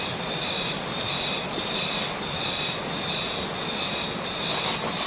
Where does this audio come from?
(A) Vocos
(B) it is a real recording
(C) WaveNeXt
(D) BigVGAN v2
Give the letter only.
B